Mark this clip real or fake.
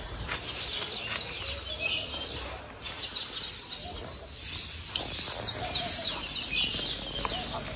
real